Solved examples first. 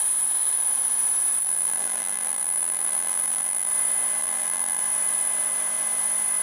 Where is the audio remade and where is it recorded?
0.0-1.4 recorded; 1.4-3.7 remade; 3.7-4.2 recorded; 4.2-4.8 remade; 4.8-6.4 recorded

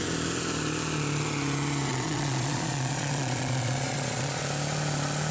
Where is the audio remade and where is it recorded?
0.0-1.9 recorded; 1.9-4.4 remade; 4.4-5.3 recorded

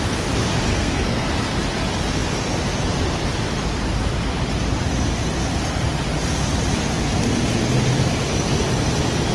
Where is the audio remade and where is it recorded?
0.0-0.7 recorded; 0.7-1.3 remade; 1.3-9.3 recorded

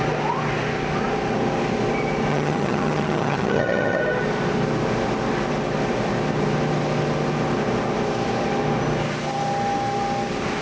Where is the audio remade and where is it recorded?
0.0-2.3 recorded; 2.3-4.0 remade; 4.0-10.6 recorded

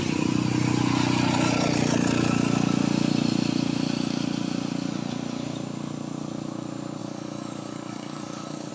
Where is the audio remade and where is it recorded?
0.0-7.0 recorded; 7.0-8.7 remade

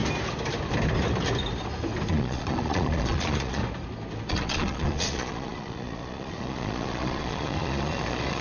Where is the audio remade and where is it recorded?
0.0-2.1 recorded; 2.1-3.6 remade; 3.6-4.3 recorded; 4.3-8.4 remade

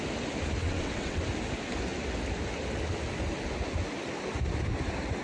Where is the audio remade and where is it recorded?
0.0-0.6 recorded; 0.6-1.2 remade; 1.2-5.2 recorded